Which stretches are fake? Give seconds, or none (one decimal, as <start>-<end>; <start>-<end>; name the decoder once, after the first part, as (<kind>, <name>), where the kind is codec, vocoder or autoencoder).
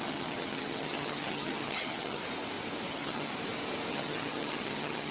0.0-2.2 (vocoder, HiFi-GAN); 2.9-3.3; 3.9-5.1